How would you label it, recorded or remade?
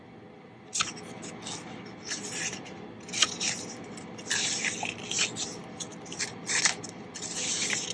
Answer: recorded